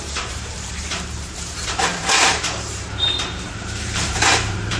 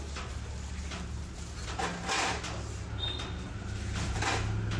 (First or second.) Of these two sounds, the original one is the second